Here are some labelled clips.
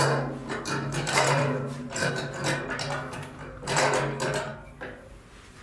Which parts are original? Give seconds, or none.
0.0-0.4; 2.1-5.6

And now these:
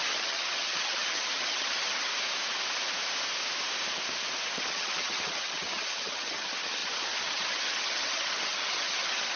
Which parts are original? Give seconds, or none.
2.1-4.6

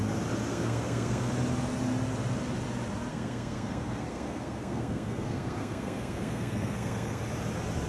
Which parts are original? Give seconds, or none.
0.0-0.5; 1.3-3.1; 7.2-7.9